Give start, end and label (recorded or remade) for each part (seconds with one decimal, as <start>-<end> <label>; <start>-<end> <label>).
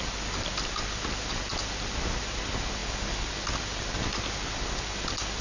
0.0-5.4 recorded